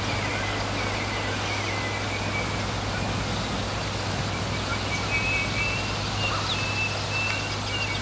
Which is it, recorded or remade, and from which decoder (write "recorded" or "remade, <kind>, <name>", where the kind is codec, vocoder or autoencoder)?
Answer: recorded